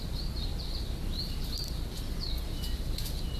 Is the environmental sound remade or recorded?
recorded